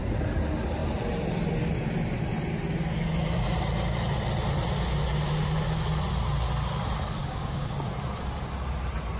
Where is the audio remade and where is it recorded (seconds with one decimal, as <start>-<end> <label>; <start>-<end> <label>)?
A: 0.0-7.2 recorded; 7.2-7.7 remade; 7.7-9.2 recorded